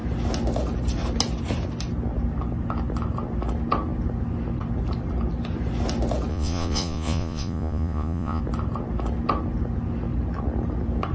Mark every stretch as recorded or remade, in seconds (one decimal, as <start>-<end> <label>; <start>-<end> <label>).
0.0-6.3 recorded; 6.3-8.4 remade; 8.4-11.1 recorded